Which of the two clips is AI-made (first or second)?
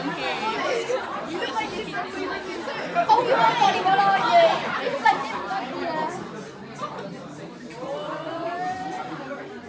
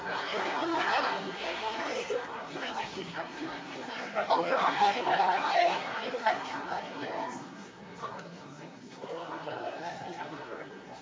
second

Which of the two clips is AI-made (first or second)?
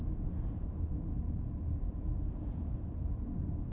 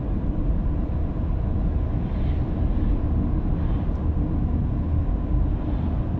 first